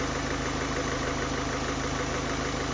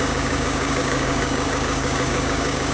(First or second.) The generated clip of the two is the second